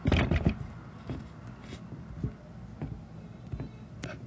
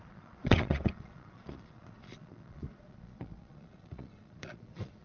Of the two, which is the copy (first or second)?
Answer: second